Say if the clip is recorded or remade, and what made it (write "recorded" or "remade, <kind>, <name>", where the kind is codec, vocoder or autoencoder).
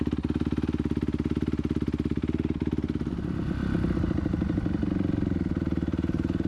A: recorded